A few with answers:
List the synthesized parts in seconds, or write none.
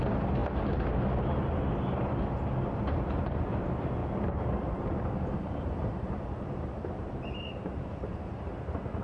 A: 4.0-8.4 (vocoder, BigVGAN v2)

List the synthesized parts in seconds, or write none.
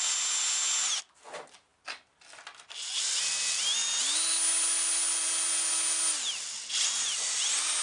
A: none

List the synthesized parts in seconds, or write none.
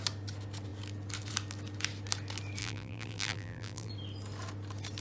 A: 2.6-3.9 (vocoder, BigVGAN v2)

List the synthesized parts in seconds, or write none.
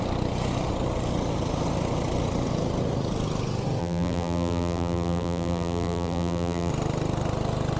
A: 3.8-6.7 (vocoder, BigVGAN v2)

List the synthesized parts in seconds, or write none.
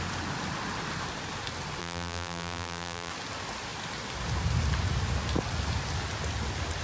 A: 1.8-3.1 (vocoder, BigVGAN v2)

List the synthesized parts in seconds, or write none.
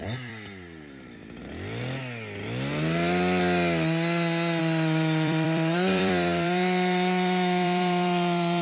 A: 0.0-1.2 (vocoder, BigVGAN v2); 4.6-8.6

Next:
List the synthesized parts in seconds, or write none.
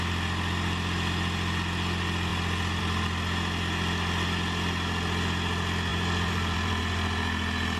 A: 5.9-6.8 (vocoder, BigVGAN v2)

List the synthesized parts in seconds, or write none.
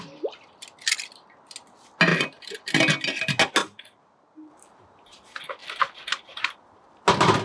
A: 2.1-2.6 (vocoder, BigVGAN v2); 3.6-4.5